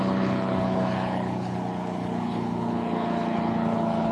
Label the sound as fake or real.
fake